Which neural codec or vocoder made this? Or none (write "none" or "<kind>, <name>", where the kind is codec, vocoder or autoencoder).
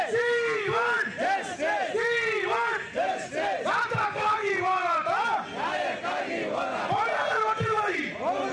none